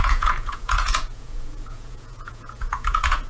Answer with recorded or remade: remade